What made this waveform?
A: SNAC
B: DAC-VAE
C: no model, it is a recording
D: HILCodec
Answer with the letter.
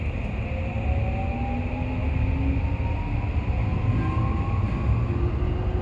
C